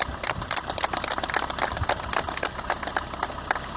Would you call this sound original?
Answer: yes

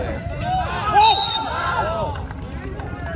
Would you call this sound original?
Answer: yes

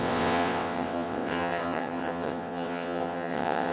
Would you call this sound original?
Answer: no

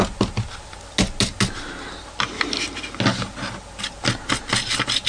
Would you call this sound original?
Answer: yes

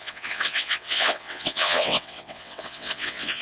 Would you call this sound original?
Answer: no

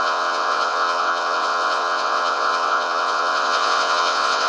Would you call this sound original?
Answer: no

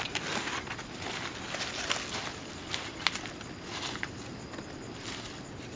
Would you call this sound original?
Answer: yes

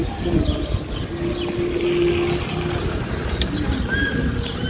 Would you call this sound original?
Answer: yes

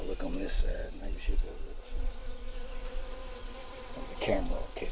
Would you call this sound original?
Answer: no